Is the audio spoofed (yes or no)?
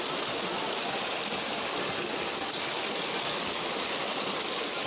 no